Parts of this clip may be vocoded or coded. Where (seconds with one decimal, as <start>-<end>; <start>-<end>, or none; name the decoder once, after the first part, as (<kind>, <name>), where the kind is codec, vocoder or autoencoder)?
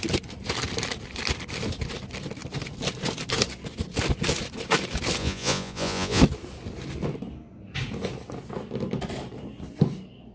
5.2-6.2 (vocoder, Vocos)